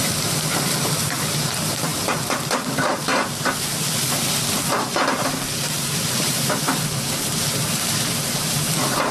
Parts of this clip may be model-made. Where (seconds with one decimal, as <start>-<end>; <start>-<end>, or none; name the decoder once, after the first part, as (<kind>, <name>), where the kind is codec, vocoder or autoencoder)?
0.0-3.1 (vocoder, BigVGAN v2); 5.7-9.1